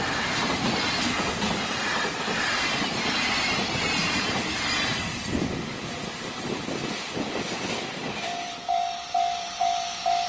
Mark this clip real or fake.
fake